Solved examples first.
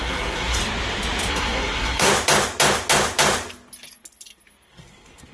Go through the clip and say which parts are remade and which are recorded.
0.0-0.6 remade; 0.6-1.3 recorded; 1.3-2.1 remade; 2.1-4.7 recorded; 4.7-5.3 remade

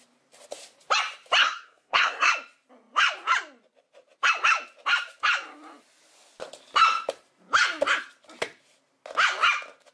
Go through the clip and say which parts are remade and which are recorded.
0.0-1.4 recorded; 1.4-2.3 remade; 2.3-9.9 recorded

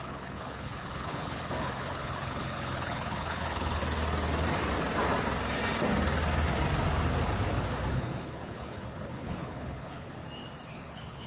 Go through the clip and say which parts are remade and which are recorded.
0.0-3.8 remade; 3.8-7.9 recorded; 7.9-10.2 remade; 10.2-10.7 recorded; 10.7-11.3 remade

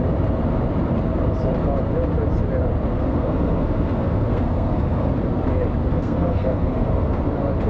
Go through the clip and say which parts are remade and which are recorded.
0.0-2.9 recorded; 2.9-5.1 remade; 5.1-5.8 recorded; 5.8-7.2 remade; 7.2-7.7 recorded

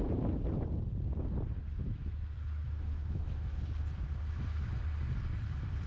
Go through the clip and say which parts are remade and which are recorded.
0.0-1.8 recorded; 1.8-3.6 remade; 3.6-5.9 recorded

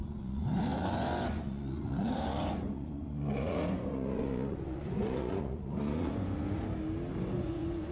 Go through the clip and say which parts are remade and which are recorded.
0.0-6.6 remade; 6.6-7.4 recorded; 7.4-7.9 remade

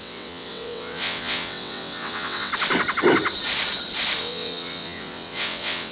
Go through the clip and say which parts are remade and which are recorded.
0.0-2.5 remade; 2.5-4.2 recorded; 4.2-5.9 remade